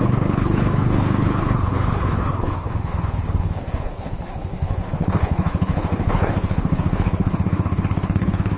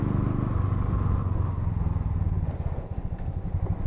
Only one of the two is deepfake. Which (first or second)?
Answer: first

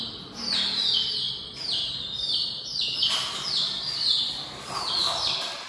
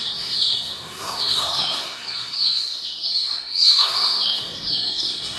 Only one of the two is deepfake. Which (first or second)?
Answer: second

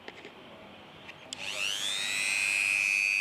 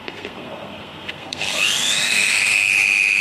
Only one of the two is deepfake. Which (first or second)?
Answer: second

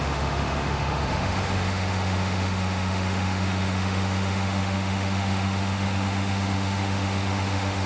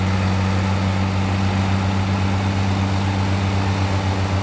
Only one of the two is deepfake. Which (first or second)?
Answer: first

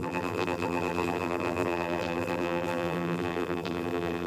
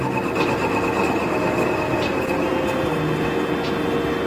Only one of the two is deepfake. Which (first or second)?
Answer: first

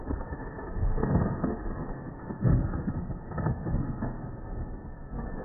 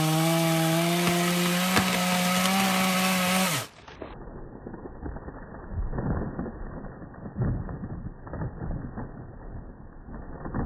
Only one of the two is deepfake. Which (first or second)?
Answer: first